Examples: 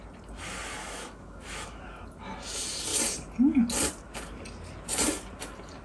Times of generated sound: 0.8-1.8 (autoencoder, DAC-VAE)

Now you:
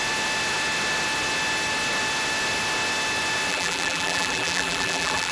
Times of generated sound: 3.5-5.3 (vocoder, BigVGAN v2)

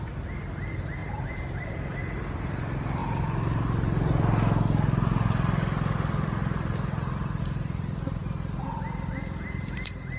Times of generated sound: 1.0-1.7 (vocoder, BigVGAN v2)

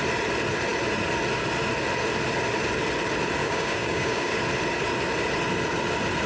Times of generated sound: 3.4-4.4 (codec, DAC)